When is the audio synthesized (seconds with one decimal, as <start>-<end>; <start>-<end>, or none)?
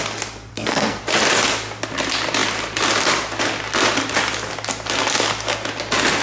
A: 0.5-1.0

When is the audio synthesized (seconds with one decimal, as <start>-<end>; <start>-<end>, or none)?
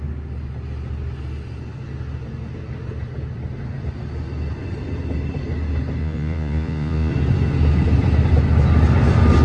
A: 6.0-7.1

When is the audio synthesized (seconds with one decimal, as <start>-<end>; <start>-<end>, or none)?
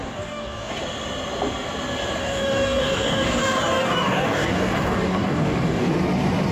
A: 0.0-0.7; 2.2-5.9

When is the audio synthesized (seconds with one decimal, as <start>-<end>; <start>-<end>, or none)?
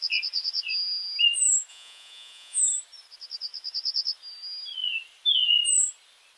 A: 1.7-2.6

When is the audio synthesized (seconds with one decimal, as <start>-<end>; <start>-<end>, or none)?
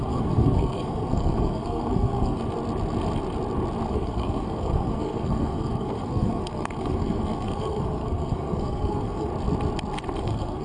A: 0.0-2.4; 3.9-9.3; 10.2-10.6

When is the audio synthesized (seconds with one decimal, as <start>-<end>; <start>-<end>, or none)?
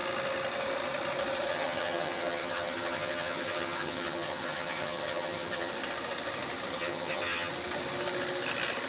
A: 1.5-5.7; 6.7-7.5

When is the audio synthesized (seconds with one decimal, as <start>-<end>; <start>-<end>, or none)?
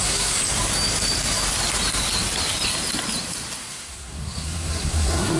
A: 0.0-0.4; 3.6-5.4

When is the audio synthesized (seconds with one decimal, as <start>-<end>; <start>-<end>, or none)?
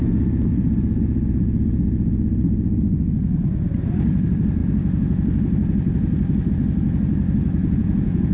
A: 7.6-8.3